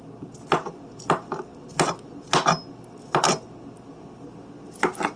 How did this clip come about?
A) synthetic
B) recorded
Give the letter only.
B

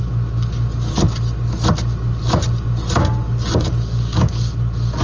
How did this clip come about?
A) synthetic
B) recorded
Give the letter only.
B